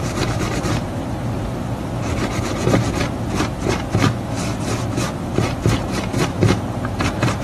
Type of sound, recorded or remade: remade